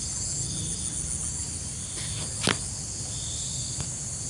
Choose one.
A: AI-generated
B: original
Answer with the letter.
B